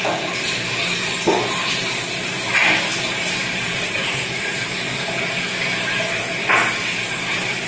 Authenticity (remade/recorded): remade